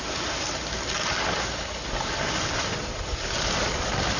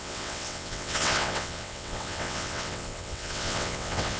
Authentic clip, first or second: first